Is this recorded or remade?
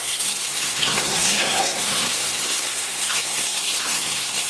remade